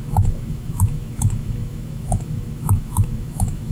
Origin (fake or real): fake